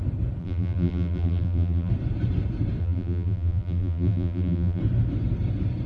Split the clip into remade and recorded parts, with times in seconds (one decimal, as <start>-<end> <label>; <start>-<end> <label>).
0.0-0.4 recorded; 0.4-1.9 remade; 1.9-2.8 recorded; 2.8-4.8 remade; 4.8-5.9 recorded